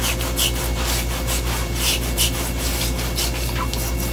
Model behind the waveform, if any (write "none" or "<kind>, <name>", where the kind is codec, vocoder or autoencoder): none